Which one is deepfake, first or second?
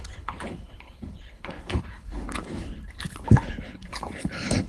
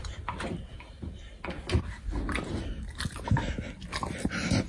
first